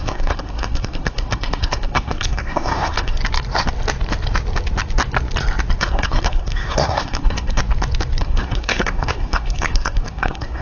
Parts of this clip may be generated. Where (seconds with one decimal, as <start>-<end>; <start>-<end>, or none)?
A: 0.0-3.2; 5.8-7.6; 8.2-10.6